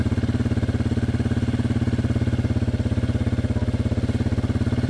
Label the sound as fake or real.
real